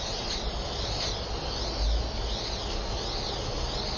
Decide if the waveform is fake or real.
real